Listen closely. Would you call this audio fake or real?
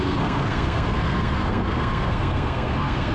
fake